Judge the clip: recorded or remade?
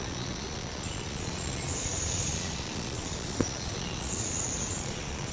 remade